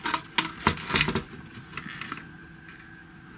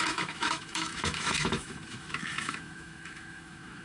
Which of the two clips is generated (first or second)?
second